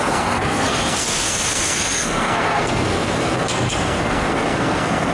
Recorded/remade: remade